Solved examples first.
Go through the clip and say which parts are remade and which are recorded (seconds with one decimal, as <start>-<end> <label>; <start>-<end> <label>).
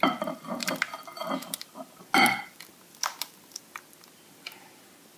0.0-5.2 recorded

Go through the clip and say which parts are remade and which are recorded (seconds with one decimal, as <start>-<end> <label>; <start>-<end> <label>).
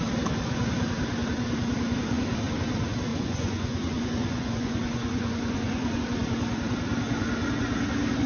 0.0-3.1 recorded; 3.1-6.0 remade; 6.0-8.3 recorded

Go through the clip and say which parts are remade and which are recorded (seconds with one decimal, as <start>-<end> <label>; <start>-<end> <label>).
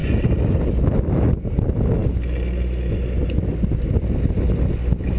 0.0-5.2 recorded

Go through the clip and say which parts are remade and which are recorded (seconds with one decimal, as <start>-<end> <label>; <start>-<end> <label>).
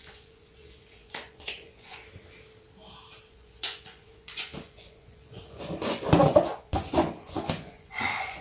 0.0-2.0 remade; 2.0-3.3 recorded; 3.3-8.4 remade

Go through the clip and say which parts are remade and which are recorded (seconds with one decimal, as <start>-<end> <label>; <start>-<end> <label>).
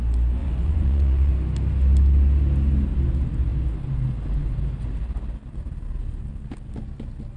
0.0-0.4 recorded; 0.4-1.3 remade; 1.3-7.4 recorded